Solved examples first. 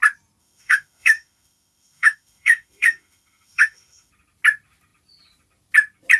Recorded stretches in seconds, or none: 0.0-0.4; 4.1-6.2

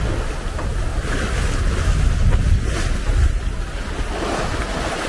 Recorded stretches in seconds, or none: 0.0-5.1

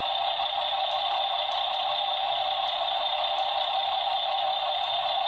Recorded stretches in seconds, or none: 0.0-5.3

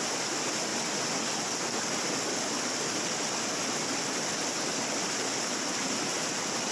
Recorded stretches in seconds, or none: 0.0-6.7

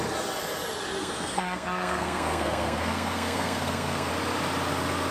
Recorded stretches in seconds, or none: 0.0-1.0; 4.1-5.1